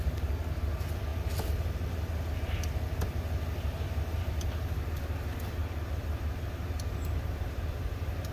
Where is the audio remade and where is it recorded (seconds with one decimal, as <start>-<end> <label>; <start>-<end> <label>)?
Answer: 0.0-8.3 recorded